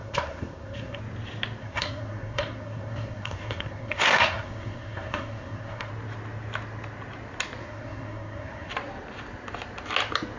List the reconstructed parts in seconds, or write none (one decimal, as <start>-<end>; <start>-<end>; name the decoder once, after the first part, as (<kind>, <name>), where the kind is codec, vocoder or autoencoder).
0.0-1.0 (codec, SNAC); 1.6-5.9; 7.6-8.7